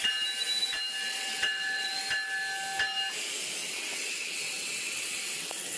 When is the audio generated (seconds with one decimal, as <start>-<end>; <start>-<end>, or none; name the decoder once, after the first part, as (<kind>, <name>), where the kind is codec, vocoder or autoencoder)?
1.0-2.0 (vocoder, WaveNeXt); 3.6-5.8